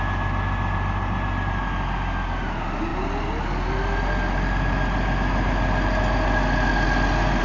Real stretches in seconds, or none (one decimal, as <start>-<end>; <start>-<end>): 0.0-7.4